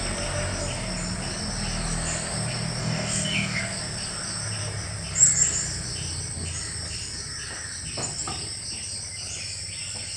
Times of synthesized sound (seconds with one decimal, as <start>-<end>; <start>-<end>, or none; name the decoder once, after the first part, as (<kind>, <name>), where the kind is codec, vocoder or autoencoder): 2.8-3.6 (codec, DAC)